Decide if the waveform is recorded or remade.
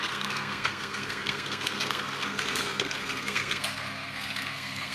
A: remade